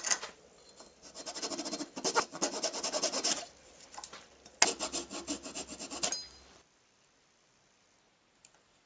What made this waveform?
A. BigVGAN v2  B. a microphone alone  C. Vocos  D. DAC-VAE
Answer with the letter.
B